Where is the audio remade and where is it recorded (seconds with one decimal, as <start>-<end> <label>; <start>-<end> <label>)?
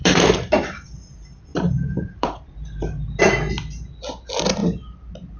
0.0-0.6 remade; 0.6-1.5 recorded; 1.5-3.2 remade; 3.2-5.4 recorded